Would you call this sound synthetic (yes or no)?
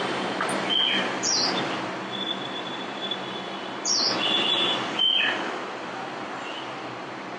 yes